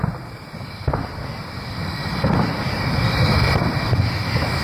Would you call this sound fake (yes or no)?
no